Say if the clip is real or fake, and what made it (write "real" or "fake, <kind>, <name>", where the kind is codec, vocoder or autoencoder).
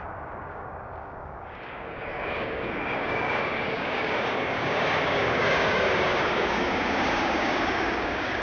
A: fake, codec, DAC